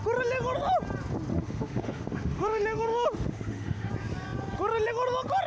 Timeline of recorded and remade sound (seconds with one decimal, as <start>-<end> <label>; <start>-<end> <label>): 0.0-1.3 recorded; 1.3-3.9 remade; 3.9-5.5 recorded